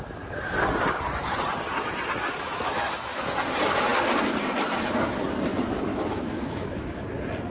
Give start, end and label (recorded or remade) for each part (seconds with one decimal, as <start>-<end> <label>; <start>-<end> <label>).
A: 0.0-2.3 recorded; 2.3-3.3 remade; 3.3-5.9 recorded; 5.9-7.0 remade; 7.0-7.5 recorded